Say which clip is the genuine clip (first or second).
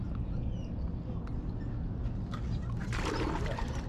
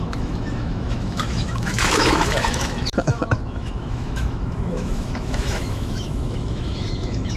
first